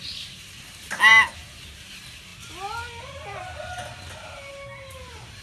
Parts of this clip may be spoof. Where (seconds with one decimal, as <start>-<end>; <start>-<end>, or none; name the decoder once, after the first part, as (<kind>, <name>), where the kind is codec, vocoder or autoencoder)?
0.0-2.3 (vocoder, BigVGAN v2); 3.0-5.4